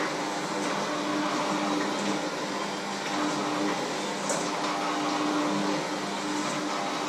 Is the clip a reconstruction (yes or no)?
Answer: no